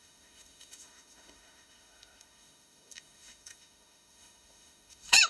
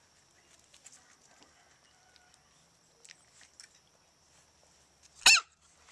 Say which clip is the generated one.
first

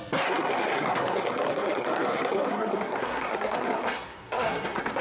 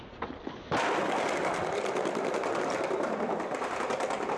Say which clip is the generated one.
first